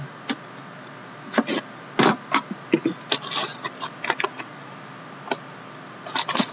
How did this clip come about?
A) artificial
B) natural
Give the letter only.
B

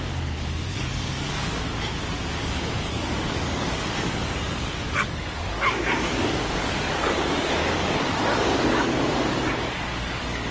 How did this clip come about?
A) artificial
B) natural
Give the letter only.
A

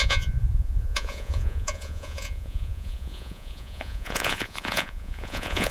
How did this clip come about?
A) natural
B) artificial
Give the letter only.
B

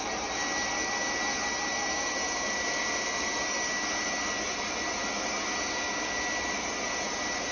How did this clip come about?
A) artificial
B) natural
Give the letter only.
B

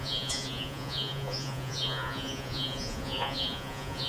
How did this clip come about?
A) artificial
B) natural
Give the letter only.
A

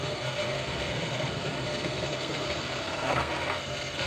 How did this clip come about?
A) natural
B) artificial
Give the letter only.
B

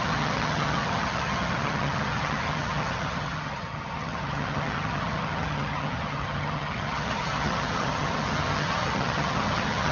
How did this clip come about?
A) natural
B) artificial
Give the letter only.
B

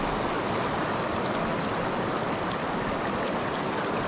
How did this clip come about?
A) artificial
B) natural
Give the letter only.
B